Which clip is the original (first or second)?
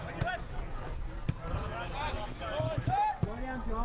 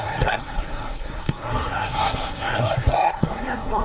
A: first